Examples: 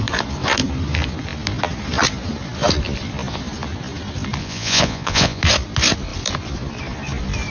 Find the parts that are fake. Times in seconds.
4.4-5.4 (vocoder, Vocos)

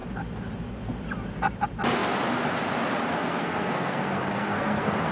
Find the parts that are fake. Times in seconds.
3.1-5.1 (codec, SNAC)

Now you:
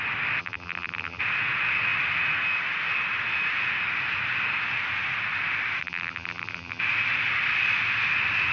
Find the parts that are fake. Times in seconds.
0.4-1.2 (vocoder, BigVGAN v2); 5.8-6.8